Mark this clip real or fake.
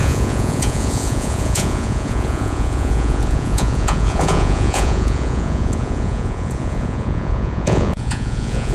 fake